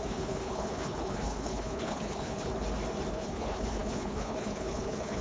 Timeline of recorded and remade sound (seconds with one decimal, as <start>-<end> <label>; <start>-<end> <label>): 0.0-2.5 remade; 2.5-3.1 recorded; 3.1-5.2 remade